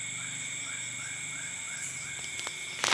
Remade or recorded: recorded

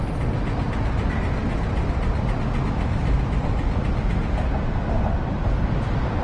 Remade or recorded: recorded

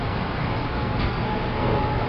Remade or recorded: remade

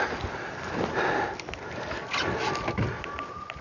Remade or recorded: recorded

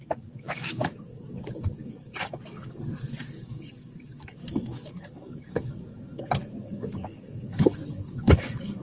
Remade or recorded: remade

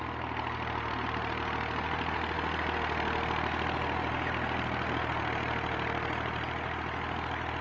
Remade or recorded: recorded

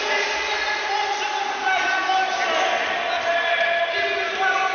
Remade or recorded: recorded